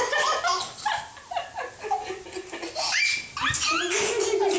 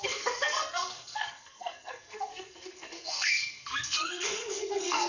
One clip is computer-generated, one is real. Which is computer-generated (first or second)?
second